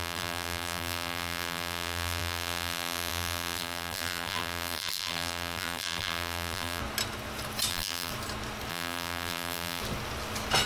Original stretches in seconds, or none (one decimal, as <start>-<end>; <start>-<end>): 6.8-7.7; 8.1-8.7; 9.8-10.7